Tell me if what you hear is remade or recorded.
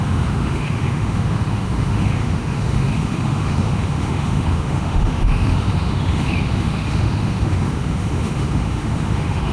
remade